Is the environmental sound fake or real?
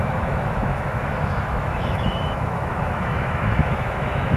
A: fake